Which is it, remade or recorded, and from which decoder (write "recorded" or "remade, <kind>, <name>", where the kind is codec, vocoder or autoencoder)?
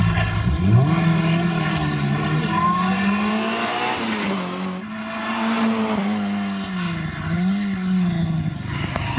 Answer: recorded